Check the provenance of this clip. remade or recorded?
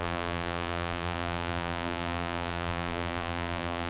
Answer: remade